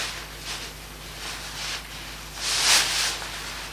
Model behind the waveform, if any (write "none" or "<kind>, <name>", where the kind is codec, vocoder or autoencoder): none